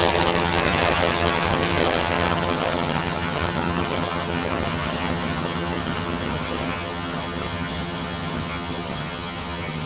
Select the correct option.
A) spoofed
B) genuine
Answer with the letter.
A